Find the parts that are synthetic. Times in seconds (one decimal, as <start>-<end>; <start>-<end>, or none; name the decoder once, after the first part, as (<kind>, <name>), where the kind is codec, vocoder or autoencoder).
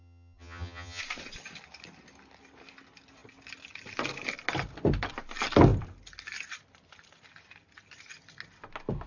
0.0-1.0 (vocoder, HiFi-GAN)